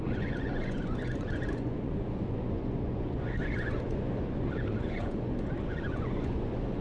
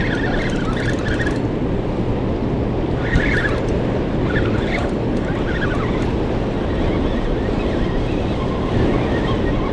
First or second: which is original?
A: second